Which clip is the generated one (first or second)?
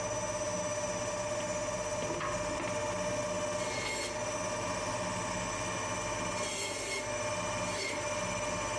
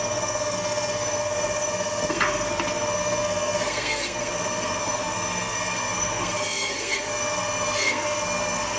second